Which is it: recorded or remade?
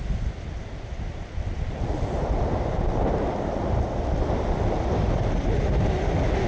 recorded